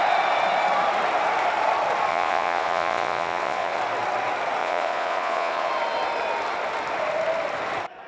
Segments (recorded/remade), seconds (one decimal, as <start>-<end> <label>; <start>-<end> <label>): 0.0-2.1 recorded; 2.1-3.8 remade; 3.8-4.6 recorded; 4.6-5.7 remade; 5.7-8.1 recorded